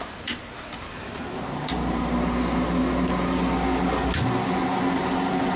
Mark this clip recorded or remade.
recorded